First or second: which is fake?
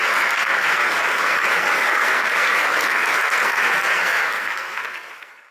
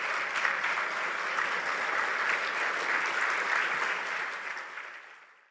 first